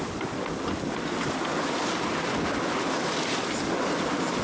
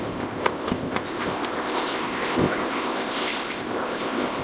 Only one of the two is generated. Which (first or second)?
second